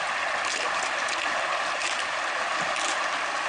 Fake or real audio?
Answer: real